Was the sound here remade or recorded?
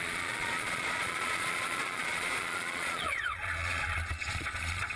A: remade